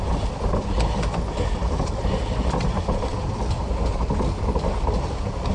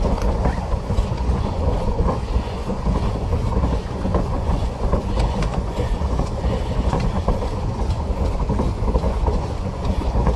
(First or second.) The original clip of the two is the first